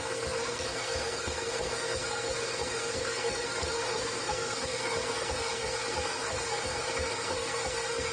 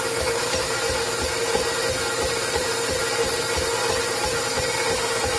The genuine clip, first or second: second